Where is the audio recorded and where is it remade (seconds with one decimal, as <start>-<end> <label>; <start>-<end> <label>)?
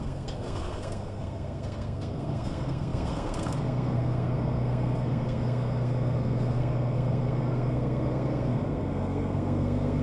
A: 0.0-10.0 remade